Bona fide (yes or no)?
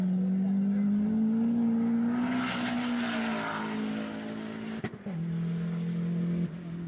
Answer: yes